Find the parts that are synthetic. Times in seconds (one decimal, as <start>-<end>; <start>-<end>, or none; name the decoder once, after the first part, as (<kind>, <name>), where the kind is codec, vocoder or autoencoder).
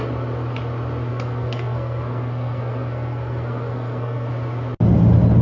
1.1-4.3 (codec, SNAC)